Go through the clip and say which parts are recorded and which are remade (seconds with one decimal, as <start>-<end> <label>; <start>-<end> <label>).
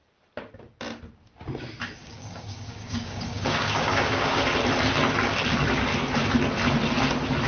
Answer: 0.0-2.0 recorded; 2.0-4.4 remade; 4.4-7.5 recorded